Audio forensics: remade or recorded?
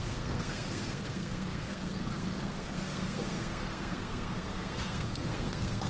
remade